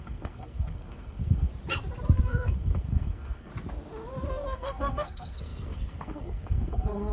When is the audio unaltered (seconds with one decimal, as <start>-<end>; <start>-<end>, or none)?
1.5-2.2; 3.5-4.3